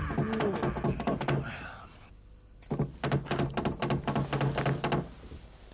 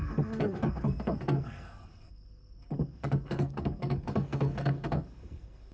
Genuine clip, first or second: first